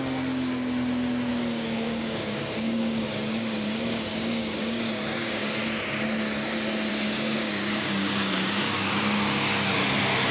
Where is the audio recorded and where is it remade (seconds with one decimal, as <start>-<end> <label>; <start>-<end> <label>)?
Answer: 0.0-1.3 recorded; 1.3-5.6 remade; 5.6-6.9 recorded; 6.9-9.7 remade; 9.7-10.3 recorded